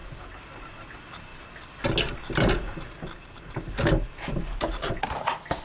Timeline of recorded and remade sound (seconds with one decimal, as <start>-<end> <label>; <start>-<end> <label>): 0.0-5.6 recorded